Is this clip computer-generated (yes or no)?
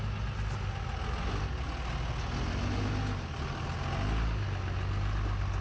no